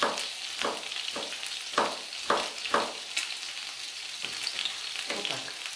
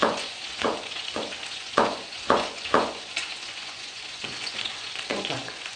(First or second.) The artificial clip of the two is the second